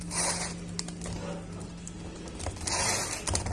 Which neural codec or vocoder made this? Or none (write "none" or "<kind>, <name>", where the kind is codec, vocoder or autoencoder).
none